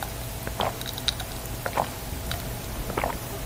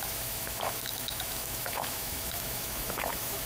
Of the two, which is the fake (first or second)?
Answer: second